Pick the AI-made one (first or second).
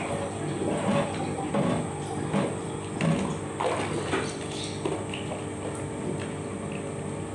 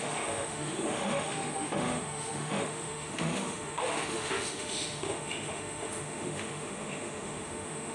second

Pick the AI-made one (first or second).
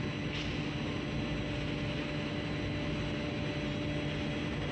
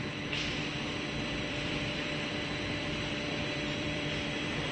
second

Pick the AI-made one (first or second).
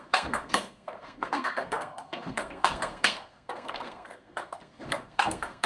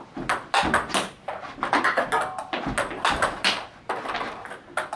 first